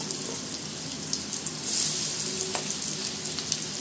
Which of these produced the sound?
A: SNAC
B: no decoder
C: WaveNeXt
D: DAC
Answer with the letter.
B